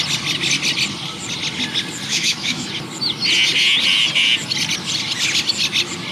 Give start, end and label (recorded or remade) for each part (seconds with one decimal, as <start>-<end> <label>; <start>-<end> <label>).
0.0-2.1 recorded; 2.1-2.7 remade; 2.7-6.1 recorded